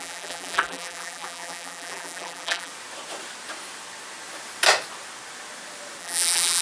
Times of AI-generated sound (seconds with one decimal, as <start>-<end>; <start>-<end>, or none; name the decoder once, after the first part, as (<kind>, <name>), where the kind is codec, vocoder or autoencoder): 0.0-2.7 (vocoder, BigVGAN v2); 6.0-6.6